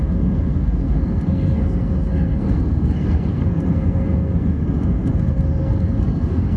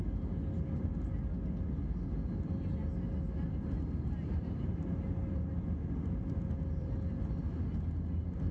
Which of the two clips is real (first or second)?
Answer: second